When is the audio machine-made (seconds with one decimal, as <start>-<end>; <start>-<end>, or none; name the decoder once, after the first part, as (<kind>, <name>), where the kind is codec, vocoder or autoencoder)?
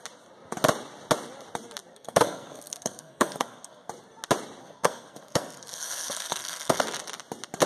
1.9-3.9 (codec, SNAC); 4.6-6.8